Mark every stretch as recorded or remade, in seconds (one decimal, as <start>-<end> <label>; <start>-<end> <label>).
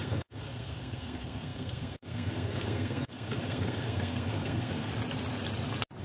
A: 0.0-4.9 remade; 4.9-6.0 recorded